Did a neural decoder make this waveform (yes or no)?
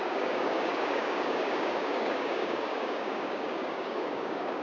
yes